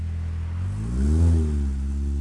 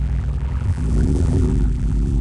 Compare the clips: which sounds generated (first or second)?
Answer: second